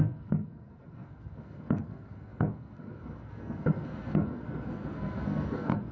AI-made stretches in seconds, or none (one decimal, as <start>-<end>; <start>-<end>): 0.0-5.9